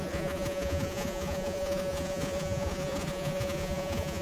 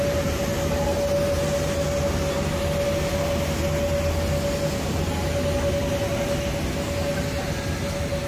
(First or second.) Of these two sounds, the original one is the second